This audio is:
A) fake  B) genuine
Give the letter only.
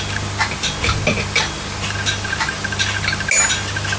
B